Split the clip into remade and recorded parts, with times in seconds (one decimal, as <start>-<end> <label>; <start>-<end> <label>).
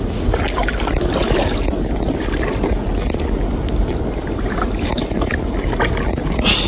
0.0-6.7 recorded